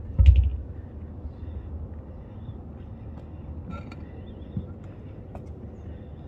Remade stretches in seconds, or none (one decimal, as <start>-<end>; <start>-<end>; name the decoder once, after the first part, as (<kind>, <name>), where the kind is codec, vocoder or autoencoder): none